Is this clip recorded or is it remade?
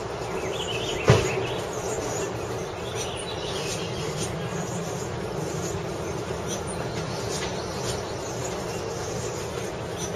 recorded